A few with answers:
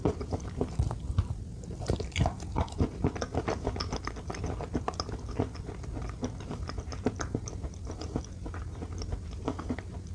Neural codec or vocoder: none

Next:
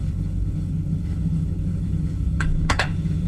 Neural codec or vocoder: codec, HILCodec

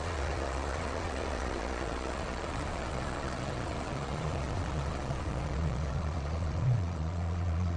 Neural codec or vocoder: vocoder, Vocos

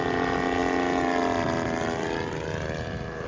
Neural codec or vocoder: none